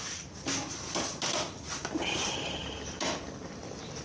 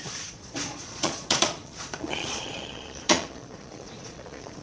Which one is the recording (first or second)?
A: first